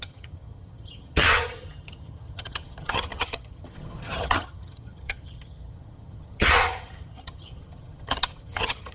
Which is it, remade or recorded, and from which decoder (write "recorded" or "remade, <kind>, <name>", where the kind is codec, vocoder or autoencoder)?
remade, vocoder, HiFi-GAN